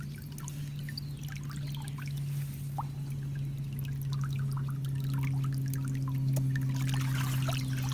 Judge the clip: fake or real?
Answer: real